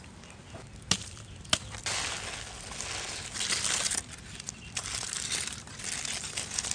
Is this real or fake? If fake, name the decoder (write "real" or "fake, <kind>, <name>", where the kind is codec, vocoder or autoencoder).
real